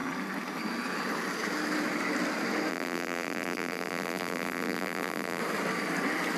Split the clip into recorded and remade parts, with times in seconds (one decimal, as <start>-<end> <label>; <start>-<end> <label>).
0.0-2.7 recorded; 2.7-5.4 remade; 5.4-6.4 recorded